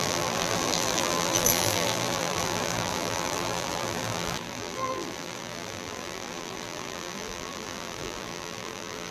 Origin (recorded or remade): remade